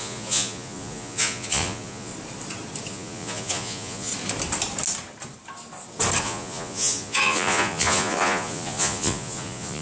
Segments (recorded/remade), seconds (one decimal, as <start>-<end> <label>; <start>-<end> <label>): 0.0-2.1 remade; 2.1-2.9 recorded; 2.9-4.1 remade; 4.1-6.2 recorded; 6.2-9.8 remade